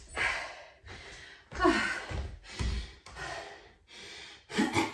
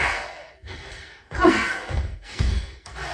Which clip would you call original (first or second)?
first